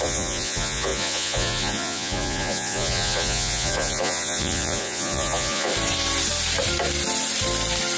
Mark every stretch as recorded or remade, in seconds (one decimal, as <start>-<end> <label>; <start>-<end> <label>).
0.0-5.7 remade; 5.7-8.0 recorded